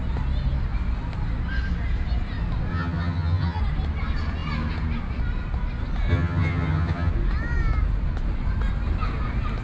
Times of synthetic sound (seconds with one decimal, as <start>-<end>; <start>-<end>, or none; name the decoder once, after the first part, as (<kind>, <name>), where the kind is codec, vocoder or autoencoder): 2.7-3.6 (vocoder, HiFi-GAN); 6.1-7.1